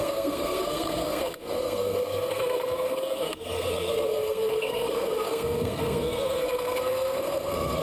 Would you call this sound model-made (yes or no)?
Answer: yes